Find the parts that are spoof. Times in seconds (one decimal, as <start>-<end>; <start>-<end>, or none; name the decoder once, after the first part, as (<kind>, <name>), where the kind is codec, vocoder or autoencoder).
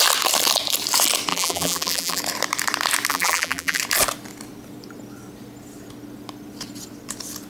1.3-2.2 (vocoder, BigVGAN v2); 3.1-3.8